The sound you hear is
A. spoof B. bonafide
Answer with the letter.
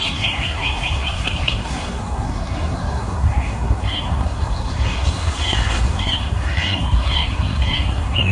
A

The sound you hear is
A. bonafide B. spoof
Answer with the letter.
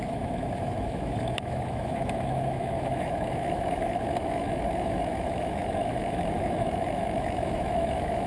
B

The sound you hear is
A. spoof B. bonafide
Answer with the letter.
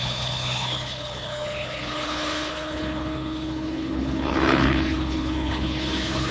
A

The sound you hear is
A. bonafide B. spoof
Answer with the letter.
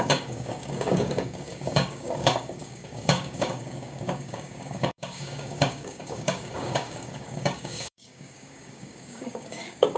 B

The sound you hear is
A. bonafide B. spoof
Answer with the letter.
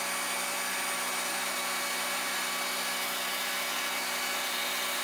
A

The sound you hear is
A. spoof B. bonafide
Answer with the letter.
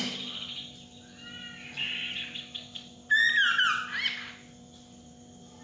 B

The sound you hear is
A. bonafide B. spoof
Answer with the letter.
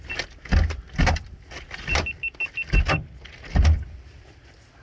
A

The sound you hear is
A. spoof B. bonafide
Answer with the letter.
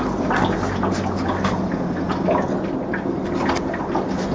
B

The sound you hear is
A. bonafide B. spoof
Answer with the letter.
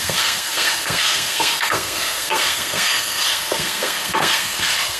B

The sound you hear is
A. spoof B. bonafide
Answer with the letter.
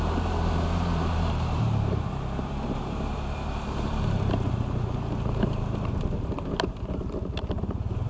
A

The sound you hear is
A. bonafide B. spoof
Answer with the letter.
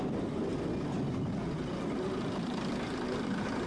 A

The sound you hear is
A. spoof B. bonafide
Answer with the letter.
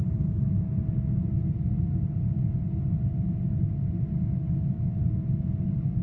B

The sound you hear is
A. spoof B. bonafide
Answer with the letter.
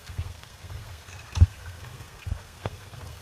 A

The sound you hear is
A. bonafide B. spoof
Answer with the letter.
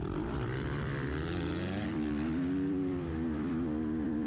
B